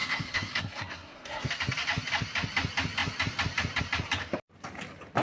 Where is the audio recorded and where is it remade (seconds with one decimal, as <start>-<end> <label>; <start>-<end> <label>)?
0.0-1.5 remade; 1.5-5.2 recorded